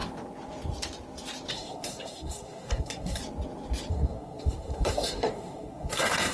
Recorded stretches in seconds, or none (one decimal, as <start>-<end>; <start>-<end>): 0.0-1.5; 3.2-3.9

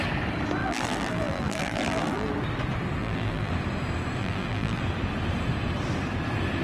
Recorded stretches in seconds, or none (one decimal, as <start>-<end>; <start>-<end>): 0.0-0.6; 2.3-3.0; 3.5-4.2; 4.8-6.6

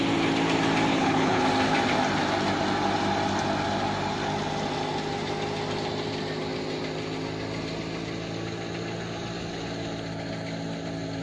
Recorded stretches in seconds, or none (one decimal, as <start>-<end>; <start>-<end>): 0.0-0.9; 1.4-11.2

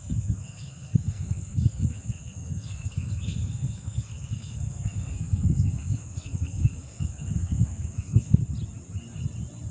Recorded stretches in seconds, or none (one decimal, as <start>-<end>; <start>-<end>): 8.4-9.7

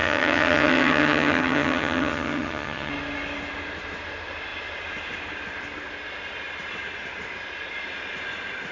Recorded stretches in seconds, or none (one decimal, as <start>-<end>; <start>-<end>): 2.9-8.7

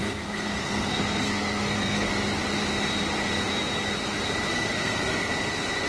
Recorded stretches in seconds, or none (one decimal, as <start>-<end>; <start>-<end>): 2.1-4.5; 5.3-5.9